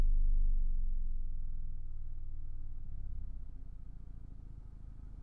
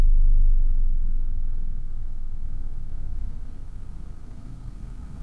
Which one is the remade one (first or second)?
second